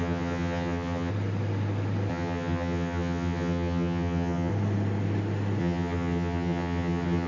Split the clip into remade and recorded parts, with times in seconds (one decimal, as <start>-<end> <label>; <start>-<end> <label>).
0.0-1.1 remade; 1.1-2.1 recorded; 2.1-4.5 remade; 4.5-5.6 recorded; 5.6-7.3 remade

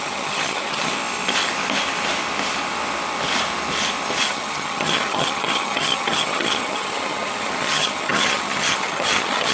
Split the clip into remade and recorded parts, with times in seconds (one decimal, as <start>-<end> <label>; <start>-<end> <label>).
0.0-0.9 remade; 0.9-4.2 recorded; 4.2-9.5 remade

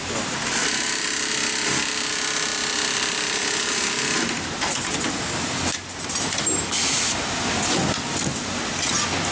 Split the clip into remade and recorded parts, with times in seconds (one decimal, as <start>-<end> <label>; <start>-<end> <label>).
0.0-9.3 recorded

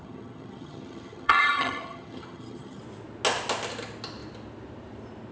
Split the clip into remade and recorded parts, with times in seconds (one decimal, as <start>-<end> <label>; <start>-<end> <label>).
0.0-2.8 remade; 2.8-5.3 recorded

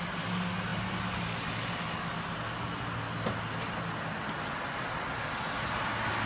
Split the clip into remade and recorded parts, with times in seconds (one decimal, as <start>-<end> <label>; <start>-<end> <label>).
0.0-6.3 recorded

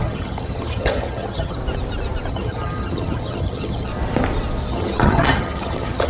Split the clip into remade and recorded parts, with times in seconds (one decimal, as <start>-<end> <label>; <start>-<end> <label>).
0.0-1.6 remade; 1.6-2.3 recorded; 2.3-3.9 remade; 3.9-4.7 recorded; 4.7-6.1 remade

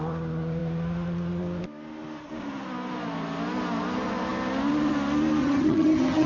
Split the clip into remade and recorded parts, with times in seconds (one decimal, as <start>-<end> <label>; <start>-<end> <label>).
0.0-5.4 recorded; 5.4-6.3 remade

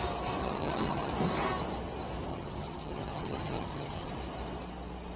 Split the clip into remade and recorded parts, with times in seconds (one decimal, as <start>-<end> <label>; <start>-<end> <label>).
0.0-0.4 recorded; 0.4-1.1 remade; 1.1-2.3 recorded; 2.3-4.1 remade; 4.1-5.2 recorded